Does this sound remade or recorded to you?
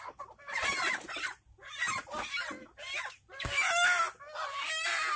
recorded